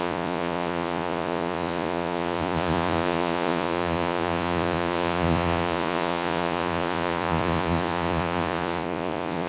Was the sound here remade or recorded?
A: remade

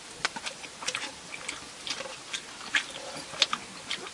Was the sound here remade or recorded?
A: recorded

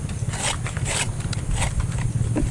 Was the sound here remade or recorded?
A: recorded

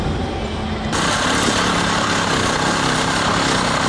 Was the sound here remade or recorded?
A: recorded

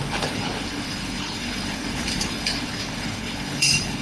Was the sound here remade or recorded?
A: remade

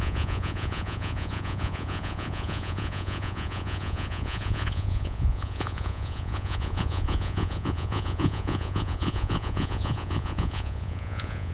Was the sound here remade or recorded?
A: remade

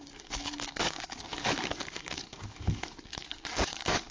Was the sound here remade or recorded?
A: remade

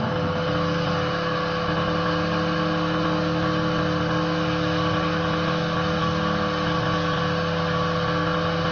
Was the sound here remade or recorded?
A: recorded